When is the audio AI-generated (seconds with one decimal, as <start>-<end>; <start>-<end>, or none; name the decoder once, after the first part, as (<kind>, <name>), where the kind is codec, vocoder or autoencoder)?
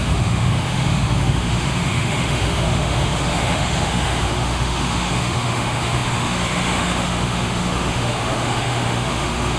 0.0-9.6 (autoencoder, DAC-VAE)